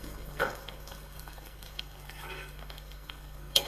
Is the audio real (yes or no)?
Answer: no